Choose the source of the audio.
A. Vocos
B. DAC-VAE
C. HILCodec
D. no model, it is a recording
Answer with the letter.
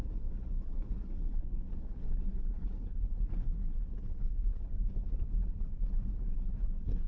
C